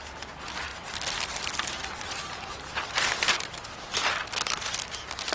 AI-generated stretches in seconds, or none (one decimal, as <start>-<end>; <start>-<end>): none